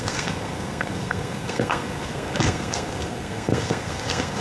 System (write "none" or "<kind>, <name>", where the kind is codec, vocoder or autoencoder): codec, SNAC